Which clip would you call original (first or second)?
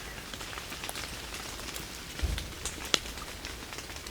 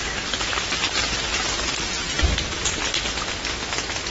second